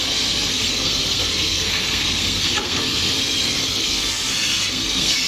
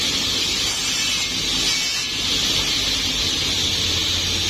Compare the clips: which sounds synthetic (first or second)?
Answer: first